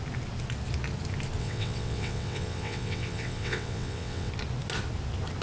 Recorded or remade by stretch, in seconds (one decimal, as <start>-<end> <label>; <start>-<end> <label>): 0.0-1.4 recorded; 1.4-4.3 remade; 4.3-5.4 recorded